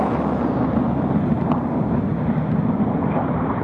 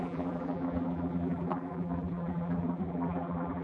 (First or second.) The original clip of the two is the first